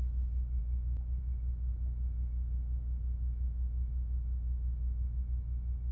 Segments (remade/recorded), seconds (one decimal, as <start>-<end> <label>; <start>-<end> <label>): 0.0-1.7 recorded; 1.7-5.2 remade; 5.2-5.9 recorded